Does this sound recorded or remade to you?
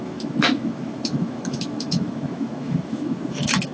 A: remade